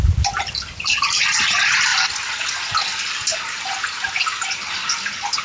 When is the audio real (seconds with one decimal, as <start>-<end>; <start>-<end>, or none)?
0.0-1.9; 2.4-5.4